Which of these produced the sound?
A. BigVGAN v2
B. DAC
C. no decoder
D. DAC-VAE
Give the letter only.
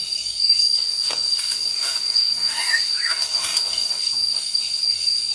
B